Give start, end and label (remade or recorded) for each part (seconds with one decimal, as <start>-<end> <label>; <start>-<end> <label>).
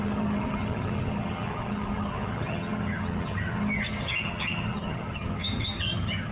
0.0-6.3 remade